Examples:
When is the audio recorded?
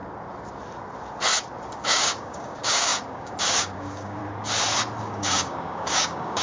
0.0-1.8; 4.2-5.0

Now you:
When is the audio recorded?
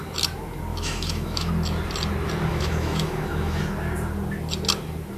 0.0-0.7; 1.5-2.5; 3.6-5.2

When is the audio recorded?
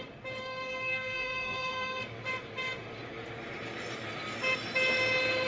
0.0-0.4; 2.0-5.5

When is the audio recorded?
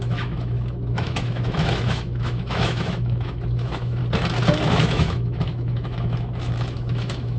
4.0-4.7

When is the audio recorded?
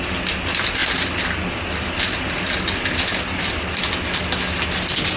0.0-0.8; 3.9-5.2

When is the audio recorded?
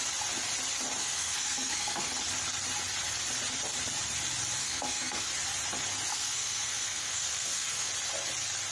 0.0-1.0; 2.1-4.6; 5.3-6.1; 7.9-8.7